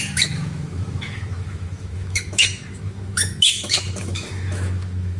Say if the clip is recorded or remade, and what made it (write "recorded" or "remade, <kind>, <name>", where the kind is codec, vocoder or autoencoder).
remade, autoencoder, DAC-VAE